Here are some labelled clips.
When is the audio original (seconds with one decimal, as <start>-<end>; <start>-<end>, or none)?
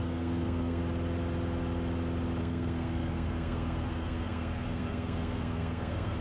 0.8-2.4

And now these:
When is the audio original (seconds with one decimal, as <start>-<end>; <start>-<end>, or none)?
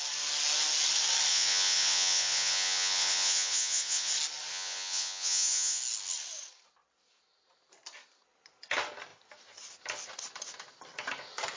0.0-1.3; 4.1-4.5; 5.8-11.6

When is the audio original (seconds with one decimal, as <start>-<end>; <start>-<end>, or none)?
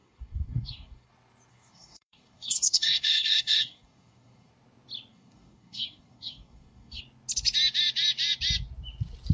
1.1-1.5; 4.5-5.1; 7.0-9.3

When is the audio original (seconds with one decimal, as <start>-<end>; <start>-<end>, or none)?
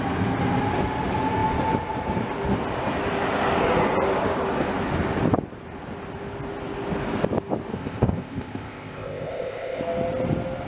0.0-7.7; 9.8-10.7